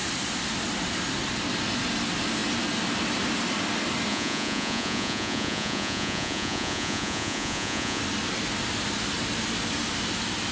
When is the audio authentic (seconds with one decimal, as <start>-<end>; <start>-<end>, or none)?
0.0-4.1; 8.0-10.5